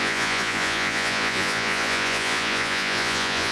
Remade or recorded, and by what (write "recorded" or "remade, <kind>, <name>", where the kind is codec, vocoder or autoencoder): remade, vocoder, Vocos